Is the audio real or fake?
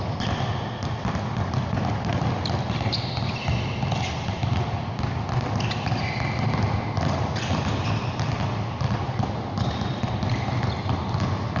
real